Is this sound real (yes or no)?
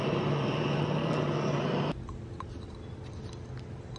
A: yes